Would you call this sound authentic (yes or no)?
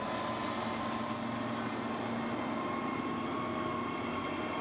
yes